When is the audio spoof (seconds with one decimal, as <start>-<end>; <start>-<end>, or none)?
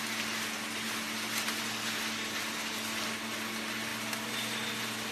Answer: none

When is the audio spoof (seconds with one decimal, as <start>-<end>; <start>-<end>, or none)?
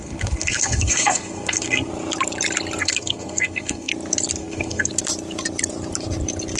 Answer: 0.0-1.9; 2.8-3.9; 4.4-4.9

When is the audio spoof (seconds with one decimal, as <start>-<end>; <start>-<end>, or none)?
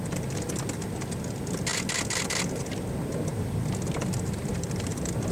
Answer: none